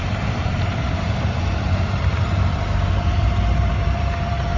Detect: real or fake fake